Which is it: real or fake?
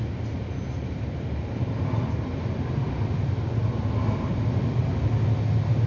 real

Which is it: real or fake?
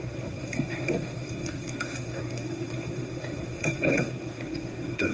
fake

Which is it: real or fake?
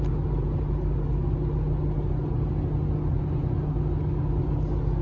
real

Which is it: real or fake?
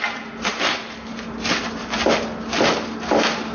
real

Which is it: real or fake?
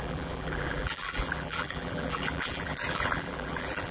fake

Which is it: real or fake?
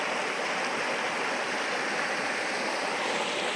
real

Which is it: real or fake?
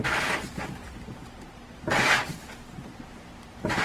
fake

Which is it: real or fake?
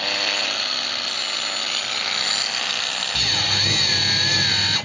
real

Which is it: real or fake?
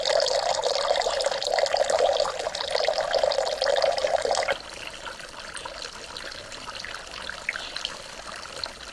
real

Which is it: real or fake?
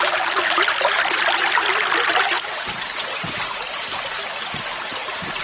real